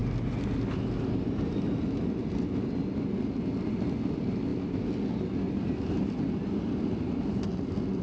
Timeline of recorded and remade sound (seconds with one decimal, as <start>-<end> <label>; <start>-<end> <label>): 0.0-8.0 recorded